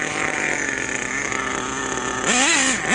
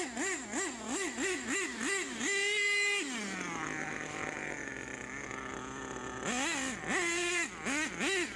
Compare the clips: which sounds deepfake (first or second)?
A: first